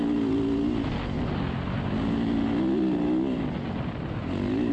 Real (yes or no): yes